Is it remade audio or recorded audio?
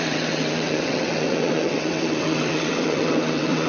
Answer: remade